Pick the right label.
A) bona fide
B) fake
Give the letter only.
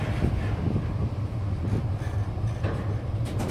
A